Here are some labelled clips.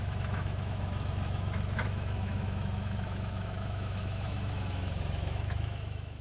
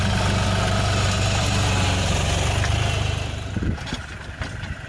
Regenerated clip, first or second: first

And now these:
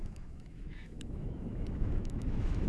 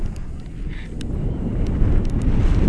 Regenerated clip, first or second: first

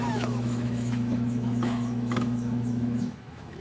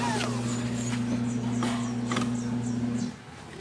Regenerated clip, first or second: first